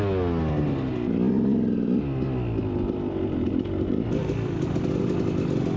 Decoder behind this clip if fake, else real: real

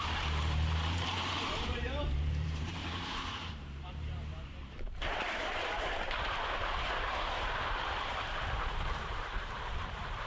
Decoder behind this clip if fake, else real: fake, vocoder, BigVGAN v2